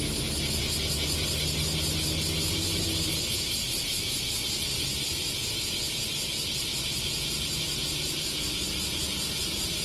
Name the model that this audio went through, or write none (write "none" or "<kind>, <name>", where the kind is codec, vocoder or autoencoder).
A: none